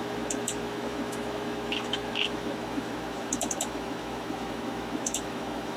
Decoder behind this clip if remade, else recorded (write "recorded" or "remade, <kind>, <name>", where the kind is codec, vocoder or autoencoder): remade, autoencoder, DAC-VAE